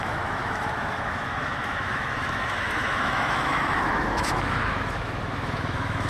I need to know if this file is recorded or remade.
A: remade